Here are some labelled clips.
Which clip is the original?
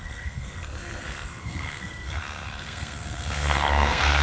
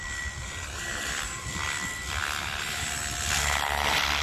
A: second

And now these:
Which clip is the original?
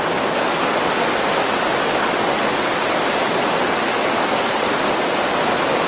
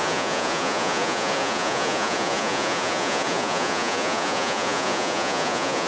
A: first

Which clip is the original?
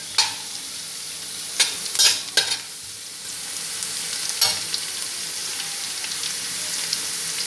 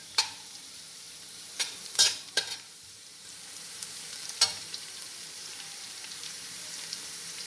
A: first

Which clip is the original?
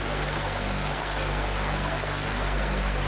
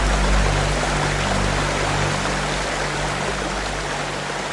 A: second